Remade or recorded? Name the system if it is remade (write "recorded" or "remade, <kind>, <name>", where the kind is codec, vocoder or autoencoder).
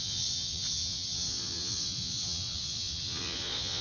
remade, vocoder, Vocos